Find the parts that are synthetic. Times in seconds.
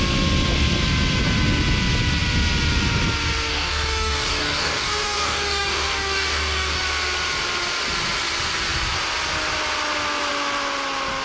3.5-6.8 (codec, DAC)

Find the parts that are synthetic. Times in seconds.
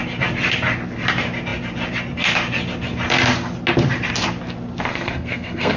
4.9-5.8 (codec, SNAC)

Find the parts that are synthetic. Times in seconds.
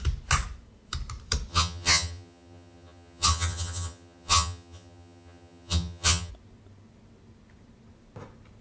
1.5-6.3 (vocoder, HiFi-GAN)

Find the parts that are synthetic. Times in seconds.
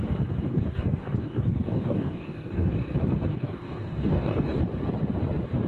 0.5-2.7 (codec, DAC); 3.3-4.6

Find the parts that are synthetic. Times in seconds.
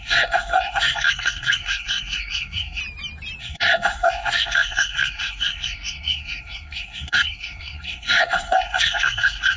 0.0-2.8 (codec, SNAC); 3.4-9.6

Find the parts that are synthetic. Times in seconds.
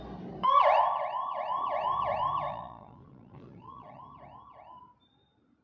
2.5-4.0 (vocoder, Vocos)